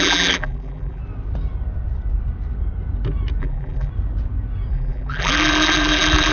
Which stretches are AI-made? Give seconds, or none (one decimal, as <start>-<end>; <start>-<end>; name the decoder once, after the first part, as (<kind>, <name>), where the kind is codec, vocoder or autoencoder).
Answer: 0.0-1.0 (vocoder, BigVGAN v2); 3.4-3.9; 4.7-6.3